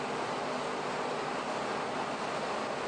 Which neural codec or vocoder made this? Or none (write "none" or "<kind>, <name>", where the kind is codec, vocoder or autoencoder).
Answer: none